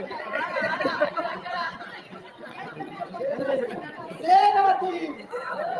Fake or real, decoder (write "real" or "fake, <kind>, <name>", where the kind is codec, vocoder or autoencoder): fake, vocoder, WaveNeXt